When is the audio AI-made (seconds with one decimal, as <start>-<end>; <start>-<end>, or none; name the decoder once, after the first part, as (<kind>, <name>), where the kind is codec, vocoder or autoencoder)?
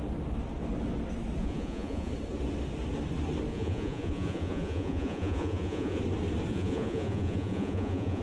1.4-2.1 (vocoder, Vocos); 3.5-6.0; 6.5-8.2